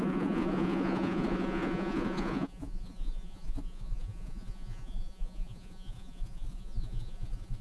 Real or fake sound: fake